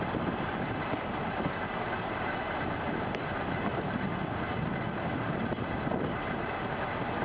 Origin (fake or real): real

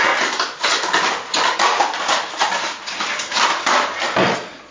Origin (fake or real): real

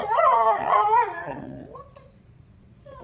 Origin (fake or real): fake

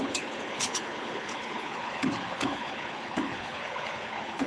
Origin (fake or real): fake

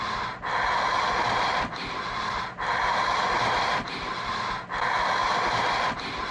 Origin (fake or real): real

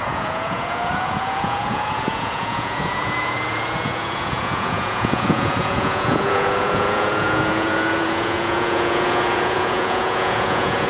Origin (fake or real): fake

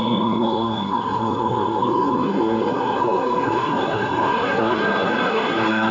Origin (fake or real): fake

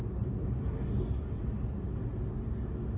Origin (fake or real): real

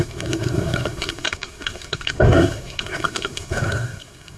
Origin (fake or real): fake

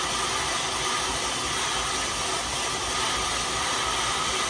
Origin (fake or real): real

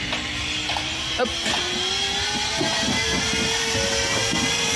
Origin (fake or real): real